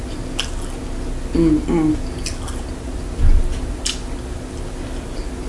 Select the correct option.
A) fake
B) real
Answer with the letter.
B